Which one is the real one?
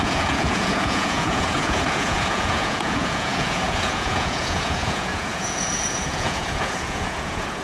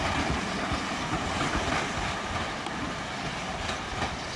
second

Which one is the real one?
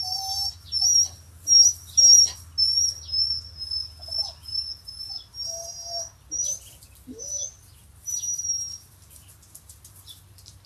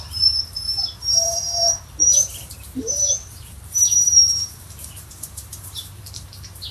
first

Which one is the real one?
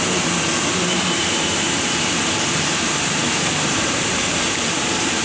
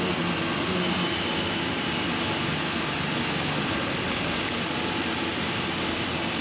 second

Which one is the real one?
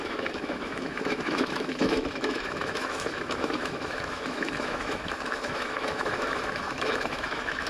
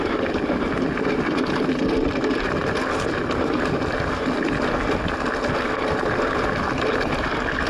second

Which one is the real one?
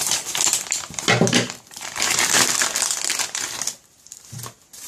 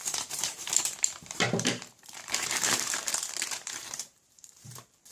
first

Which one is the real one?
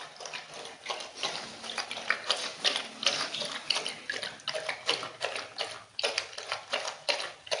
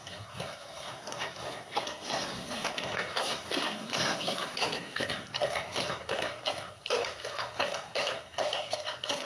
first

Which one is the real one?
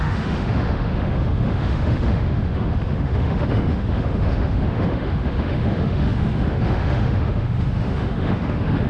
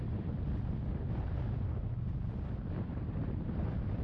second